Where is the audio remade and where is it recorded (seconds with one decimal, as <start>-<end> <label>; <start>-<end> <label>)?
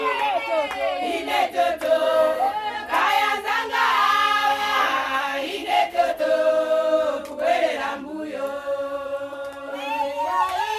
0.0-1.9 recorded; 1.9-2.7 remade; 2.7-4.5 recorded; 4.5-6.2 remade; 6.2-10.8 recorded